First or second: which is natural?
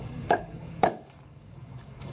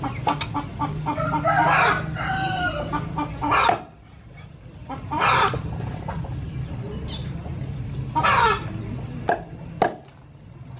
second